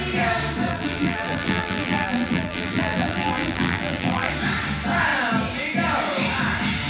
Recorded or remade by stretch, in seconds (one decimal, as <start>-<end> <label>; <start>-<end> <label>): 0.0-0.7 recorded; 0.7-4.3 remade; 4.3-6.9 recorded